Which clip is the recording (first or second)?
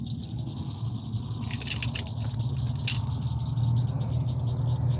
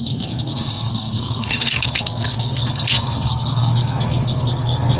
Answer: first